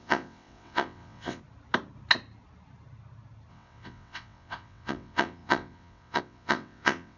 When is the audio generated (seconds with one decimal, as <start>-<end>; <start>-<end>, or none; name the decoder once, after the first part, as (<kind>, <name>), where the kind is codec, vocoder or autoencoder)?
0.0-1.4 (vocoder, WaveNeXt); 3.5-7.2